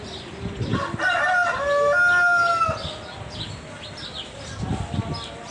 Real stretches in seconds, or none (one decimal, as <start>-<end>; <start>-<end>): 0.0-5.5